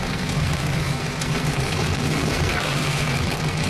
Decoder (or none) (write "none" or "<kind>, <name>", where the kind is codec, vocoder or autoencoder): codec, SNAC